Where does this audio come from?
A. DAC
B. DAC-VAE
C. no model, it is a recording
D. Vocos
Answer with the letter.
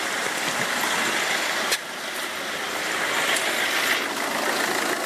C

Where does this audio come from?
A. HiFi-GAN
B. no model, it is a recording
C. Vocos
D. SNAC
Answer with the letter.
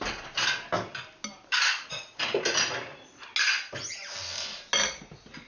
B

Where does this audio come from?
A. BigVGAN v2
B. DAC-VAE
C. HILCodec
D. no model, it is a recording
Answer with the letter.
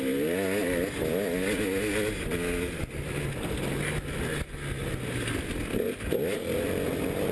D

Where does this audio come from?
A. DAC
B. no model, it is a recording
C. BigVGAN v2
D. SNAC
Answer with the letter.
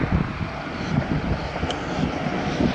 B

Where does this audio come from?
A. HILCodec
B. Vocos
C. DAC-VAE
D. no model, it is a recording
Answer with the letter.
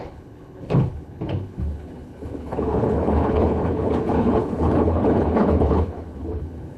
A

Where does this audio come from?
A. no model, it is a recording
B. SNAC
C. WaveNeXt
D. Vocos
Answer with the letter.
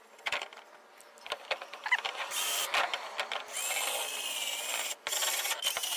A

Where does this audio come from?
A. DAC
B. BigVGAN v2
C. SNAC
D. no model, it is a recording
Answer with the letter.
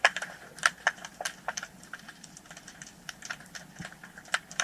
B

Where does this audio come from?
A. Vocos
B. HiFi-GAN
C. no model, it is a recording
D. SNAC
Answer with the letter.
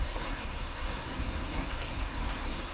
D